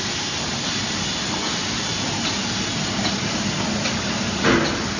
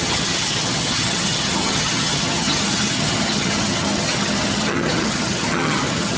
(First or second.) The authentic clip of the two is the first